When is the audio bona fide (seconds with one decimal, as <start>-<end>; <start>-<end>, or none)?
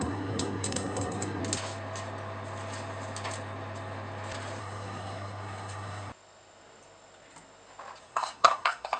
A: 1.4-4.6; 6.1-8.0